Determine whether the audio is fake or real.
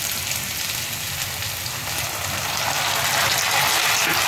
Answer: real